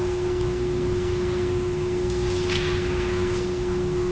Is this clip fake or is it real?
fake